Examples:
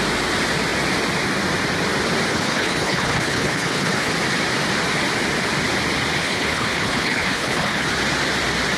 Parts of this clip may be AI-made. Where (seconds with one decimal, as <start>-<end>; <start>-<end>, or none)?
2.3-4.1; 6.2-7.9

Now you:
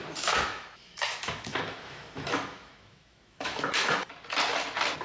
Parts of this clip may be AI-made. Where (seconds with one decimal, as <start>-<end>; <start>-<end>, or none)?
0.0-4.1

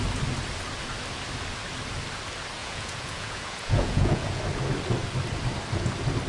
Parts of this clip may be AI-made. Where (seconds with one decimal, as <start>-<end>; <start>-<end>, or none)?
2.6-4.4